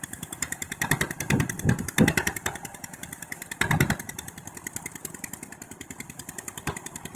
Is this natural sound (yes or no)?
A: yes